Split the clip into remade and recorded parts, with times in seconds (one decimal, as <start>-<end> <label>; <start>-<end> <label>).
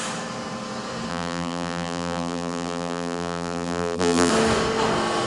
0.0-1.1 recorded; 1.1-4.3 remade; 4.3-5.3 recorded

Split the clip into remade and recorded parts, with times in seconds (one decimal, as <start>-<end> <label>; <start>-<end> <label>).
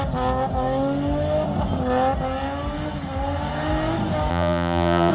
0.0-4.3 recorded; 4.3-5.1 remade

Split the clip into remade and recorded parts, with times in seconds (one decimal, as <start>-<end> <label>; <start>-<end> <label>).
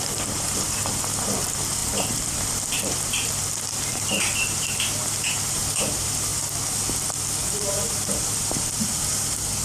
0.0-6.3 remade; 6.3-7.7 recorded; 7.7-9.6 remade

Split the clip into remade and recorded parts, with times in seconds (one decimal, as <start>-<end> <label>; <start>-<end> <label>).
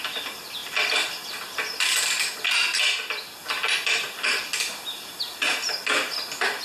0.0-6.6 recorded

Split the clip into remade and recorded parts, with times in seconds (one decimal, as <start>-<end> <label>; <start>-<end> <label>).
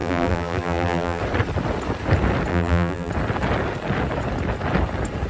0.0-1.2 remade; 1.2-2.5 recorded; 2.5-3.1 remade; 3.1-5.3 recorded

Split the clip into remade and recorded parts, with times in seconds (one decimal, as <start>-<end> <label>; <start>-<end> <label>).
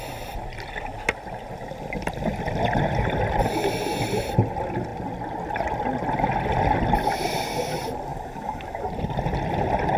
0.0-8.1 recorded; 8.1-9.6 remade; 9.6-10.0 recorded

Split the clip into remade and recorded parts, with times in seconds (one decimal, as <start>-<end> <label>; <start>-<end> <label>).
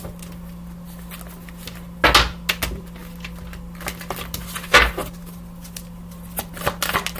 0.0-7.2 recorded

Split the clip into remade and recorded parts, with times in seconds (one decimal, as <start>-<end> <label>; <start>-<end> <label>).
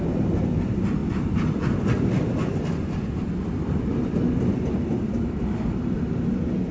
0.0-1.0 recorded; 1.0-5.0 remade; 5.0-6.7 recorded